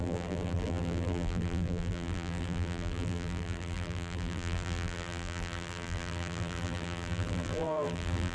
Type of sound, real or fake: fake